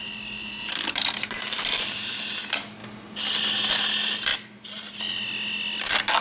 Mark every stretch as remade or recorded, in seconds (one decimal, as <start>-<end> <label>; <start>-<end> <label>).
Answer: 0.0-0.4 recorded; 0.4-2.1 remade; 2.1-4.3 recorded; 4.3-5.0 remade; 5.0-6.2 recorded